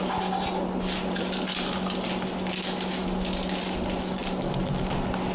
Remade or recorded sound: recorded